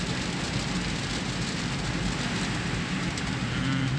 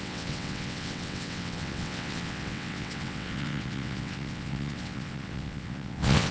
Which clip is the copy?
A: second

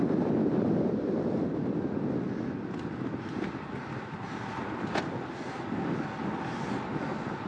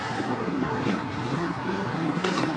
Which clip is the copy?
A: second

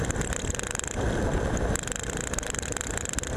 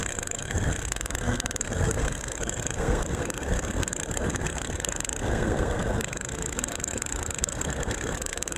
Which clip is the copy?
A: second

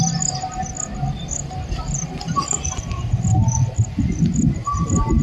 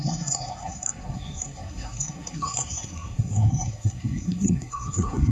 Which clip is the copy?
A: second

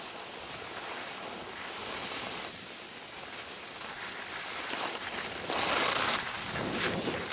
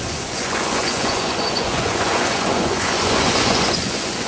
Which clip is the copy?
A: second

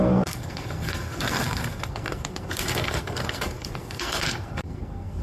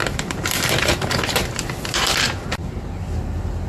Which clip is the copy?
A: first